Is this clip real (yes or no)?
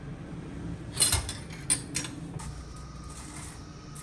yes